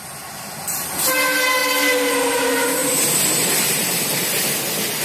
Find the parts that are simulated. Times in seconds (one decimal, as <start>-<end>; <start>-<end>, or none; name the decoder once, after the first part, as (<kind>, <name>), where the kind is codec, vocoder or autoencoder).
none